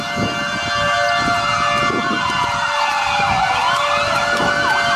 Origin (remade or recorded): recorded